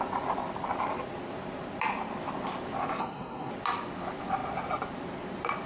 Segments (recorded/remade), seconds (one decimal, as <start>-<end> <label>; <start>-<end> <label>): 0.0-3.0 recorded; 3.0-3.5 remade; 3.5-5.7 recorded